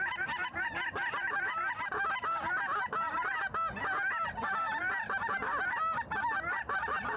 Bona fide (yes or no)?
yes